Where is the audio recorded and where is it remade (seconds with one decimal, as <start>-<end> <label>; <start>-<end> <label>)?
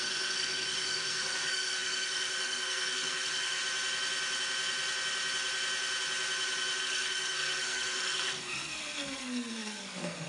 0.0-3.6 remade; 3.6-6.8 recorded; 6.8-10.3 remade